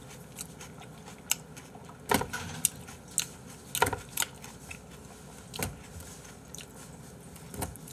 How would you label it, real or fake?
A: real